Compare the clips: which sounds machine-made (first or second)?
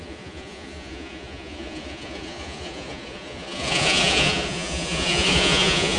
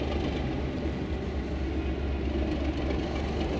first